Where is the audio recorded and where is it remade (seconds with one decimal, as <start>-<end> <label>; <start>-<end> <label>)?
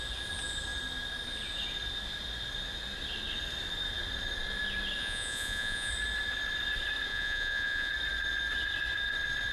0.0-5.0 recorded; 5.0-5.9 remade; 5.9-7.1 recorded; 7.1-7.9 remade; 7.9-9.5 recorded